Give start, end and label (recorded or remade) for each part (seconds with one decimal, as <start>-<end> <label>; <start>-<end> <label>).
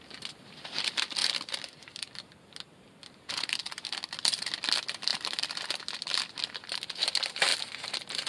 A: 0.0-7.5 remade; 7.5-8.3 recorded